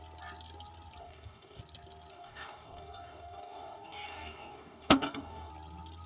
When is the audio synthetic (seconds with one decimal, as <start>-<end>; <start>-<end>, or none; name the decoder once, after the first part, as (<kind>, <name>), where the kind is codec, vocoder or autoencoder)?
1.0-1.6 (codec, DAC); 2.1-5.5